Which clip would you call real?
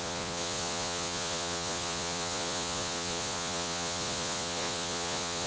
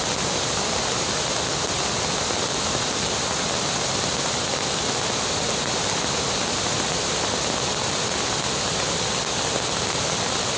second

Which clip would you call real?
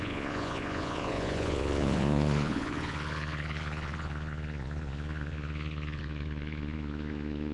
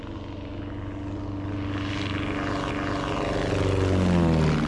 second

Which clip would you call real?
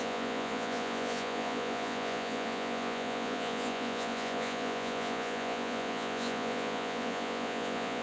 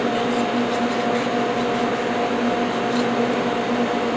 second